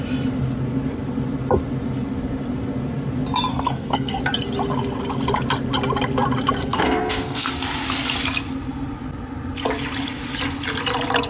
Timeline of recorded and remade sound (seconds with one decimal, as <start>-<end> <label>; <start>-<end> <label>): 0.0-3.5 recorded; 3.5-4.2 remade; 4.2-6.6 recorded; 6.6-7.5 remade; 7.5-11.3 recorded